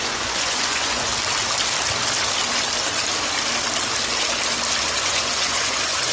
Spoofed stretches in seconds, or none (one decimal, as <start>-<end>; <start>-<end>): 0.0-1.1; 4.8-6.1